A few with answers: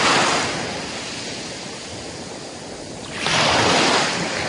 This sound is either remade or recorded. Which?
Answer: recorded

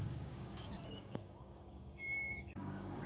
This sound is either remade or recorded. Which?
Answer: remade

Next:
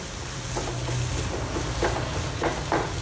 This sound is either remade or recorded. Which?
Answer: recorded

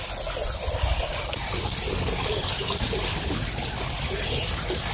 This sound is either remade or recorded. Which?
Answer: remade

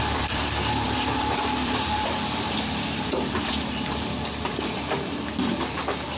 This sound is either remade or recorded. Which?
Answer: remade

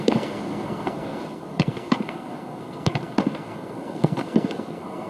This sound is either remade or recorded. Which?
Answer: remade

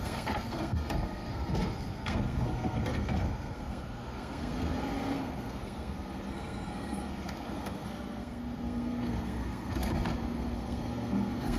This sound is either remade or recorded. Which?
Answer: remade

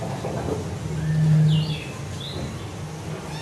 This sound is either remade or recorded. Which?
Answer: recorded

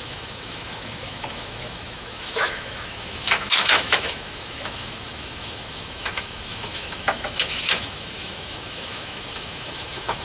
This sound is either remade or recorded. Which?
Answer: remade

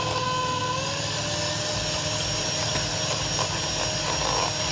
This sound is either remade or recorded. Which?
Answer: recorded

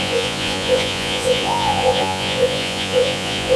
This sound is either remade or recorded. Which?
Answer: remade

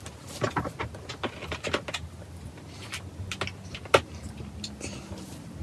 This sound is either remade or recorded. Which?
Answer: recorded